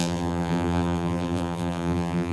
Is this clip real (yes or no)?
no